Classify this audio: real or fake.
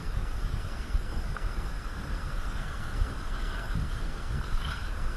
fake